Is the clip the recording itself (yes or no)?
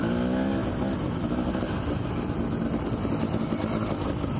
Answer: yes